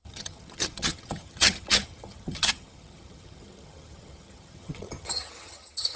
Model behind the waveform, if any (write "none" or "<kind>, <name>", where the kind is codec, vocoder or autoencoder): vocoder, HiFi-GAN